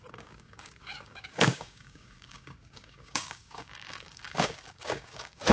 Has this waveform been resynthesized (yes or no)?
yes